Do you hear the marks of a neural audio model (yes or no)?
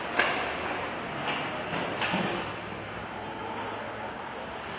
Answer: no